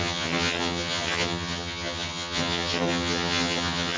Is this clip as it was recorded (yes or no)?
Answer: no